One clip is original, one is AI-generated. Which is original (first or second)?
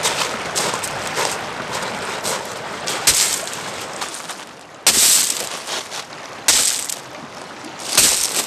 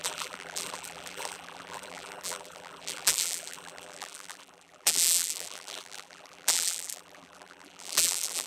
first